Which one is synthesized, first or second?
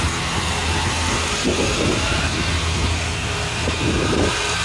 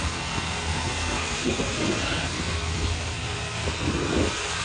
second